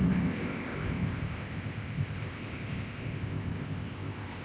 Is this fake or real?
fake